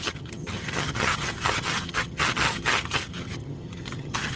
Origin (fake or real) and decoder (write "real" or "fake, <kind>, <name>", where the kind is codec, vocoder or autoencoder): fake, vocoder, HiFi-GAN